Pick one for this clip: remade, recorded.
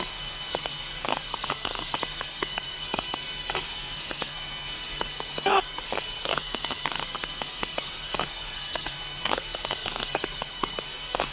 remade